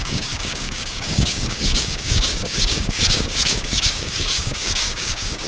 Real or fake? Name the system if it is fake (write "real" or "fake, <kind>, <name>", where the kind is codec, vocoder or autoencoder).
fake, codec, DAC